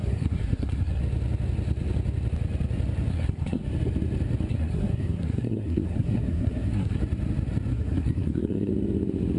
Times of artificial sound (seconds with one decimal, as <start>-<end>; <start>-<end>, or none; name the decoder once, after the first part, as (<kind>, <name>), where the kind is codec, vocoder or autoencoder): 0.0-1.0 (codec, SNAC); 3.1-3.6; 4.5-7.0; 7.7-8.7